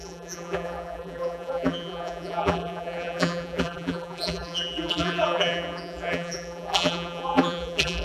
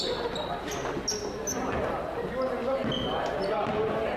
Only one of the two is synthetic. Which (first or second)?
first